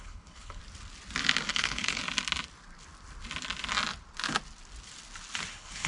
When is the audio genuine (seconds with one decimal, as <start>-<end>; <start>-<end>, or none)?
0.6-1.5; 2.0-5.5